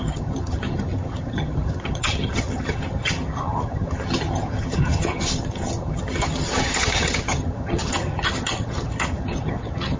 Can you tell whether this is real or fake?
fake